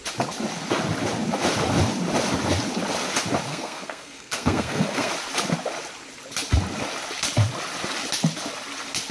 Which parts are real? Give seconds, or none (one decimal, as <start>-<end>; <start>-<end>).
0.0-3.5; 5.1-9.1